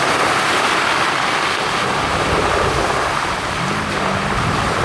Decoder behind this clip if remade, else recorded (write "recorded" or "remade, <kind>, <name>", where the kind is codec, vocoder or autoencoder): recorded